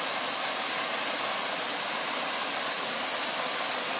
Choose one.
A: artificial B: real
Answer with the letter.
B